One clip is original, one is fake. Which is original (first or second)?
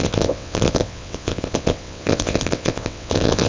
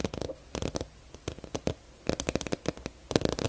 second